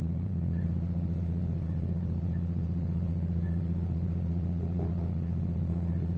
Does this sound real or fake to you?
fake